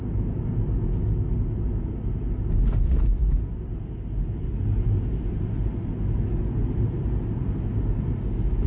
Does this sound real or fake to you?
real